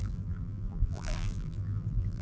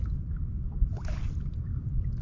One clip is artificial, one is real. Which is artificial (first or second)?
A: first